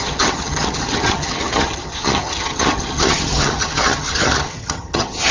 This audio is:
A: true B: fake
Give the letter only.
B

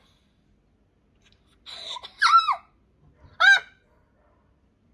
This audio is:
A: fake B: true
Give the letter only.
B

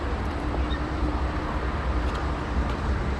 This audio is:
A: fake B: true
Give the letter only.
A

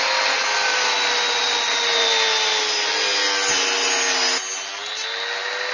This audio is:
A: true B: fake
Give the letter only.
A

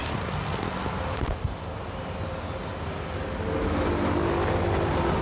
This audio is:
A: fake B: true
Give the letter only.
B